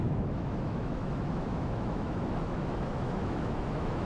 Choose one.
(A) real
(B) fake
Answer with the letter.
B